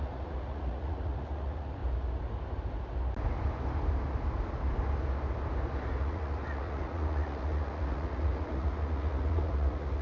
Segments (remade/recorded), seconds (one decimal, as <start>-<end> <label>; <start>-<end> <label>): 0.0-1.8 remade; 1.8-6.0 recorded; 6.0-10.0 remade